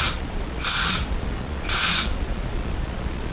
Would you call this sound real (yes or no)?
no